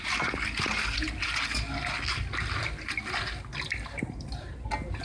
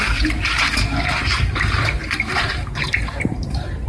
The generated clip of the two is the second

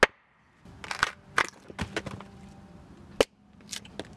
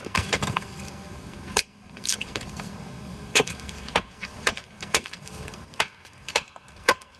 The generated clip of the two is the second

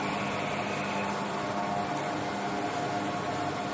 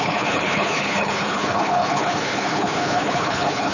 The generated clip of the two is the second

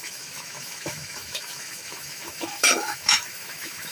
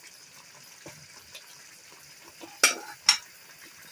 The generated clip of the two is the first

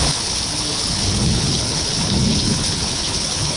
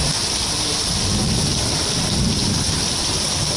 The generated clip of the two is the first